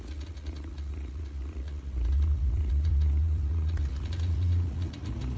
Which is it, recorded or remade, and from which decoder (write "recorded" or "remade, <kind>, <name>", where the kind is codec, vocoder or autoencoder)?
remade, vocoder, Vocos